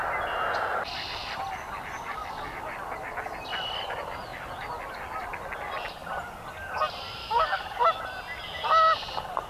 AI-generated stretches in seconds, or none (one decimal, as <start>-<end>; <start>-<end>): 7.2-7.8